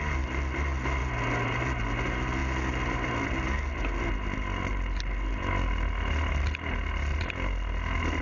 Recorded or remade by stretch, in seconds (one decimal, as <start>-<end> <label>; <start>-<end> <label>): 0.0-8.2 recorded